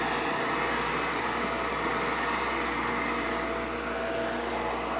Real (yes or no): yes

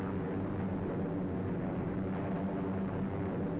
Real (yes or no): yes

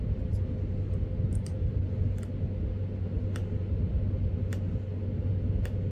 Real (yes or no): yes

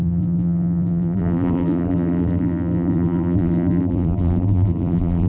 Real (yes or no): no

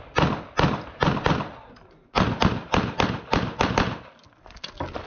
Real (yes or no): yes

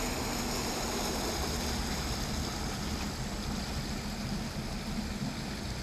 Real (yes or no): yes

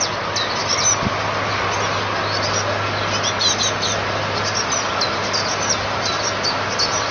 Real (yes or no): yes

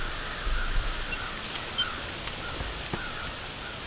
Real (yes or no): yes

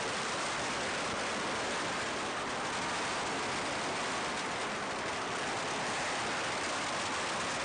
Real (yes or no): yes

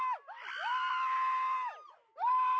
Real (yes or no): yes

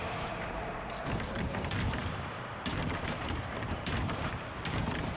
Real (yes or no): no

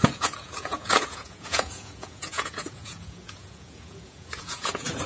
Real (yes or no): no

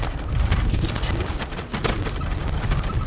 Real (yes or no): no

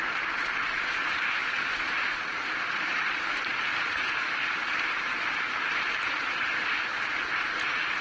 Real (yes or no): no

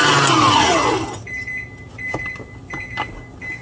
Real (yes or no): yes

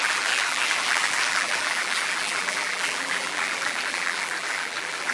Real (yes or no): no